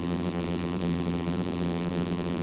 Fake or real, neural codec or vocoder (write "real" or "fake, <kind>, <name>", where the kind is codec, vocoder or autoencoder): fake, vocoder, BigVGAN v2